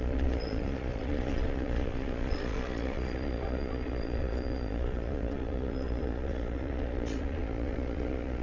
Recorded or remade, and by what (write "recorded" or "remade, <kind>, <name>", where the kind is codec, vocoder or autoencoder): remade, vocoder, Vocos